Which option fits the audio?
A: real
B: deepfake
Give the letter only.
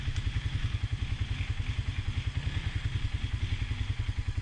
A